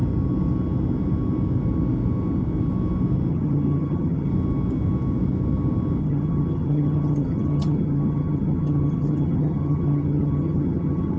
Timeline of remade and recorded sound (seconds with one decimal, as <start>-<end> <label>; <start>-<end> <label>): 0.0-3.3 recorded; 3.3-4.3 remade; 4.3-6.0 recorded; 6.0-11.2 remade